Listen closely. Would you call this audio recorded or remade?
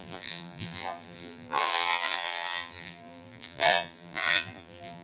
remade